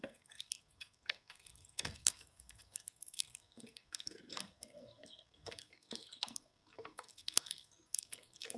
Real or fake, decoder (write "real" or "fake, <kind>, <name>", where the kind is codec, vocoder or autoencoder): fake, codec, SNAC